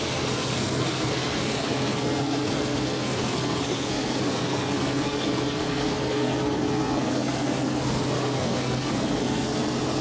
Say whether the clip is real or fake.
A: fake